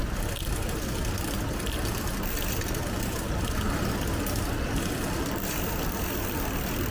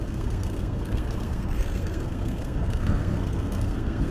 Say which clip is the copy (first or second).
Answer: second